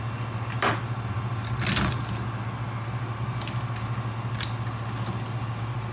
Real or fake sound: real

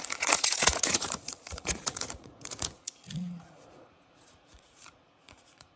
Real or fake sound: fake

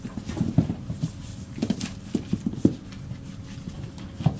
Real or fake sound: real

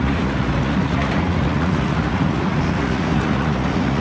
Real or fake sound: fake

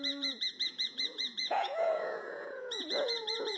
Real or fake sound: fake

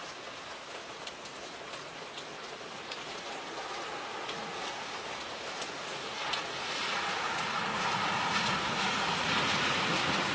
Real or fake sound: fake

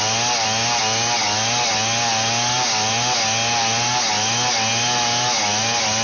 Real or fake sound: real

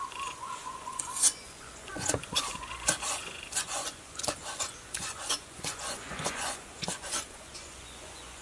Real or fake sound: fake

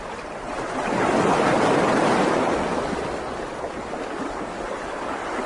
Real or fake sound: real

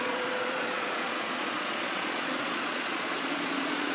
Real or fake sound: fake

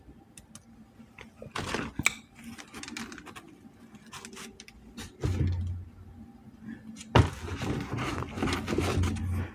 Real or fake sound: real